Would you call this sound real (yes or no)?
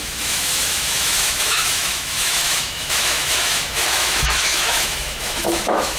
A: no